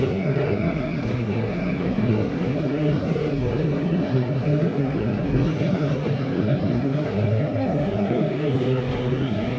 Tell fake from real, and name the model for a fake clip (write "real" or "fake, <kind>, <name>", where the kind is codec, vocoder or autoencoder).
fake, codec, SNAC